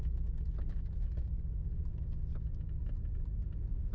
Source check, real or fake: real